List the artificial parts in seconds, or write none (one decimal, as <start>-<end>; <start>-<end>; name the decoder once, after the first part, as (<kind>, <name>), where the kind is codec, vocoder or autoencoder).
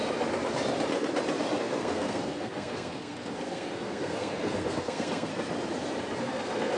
1.6-5.3 (codec, SNAC); 6.2-6.8